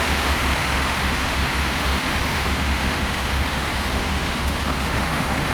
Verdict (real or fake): fake